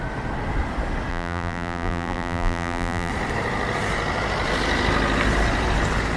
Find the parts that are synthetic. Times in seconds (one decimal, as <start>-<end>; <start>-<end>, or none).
1.1-3.1